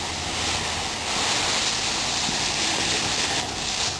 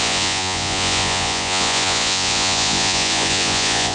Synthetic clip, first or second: second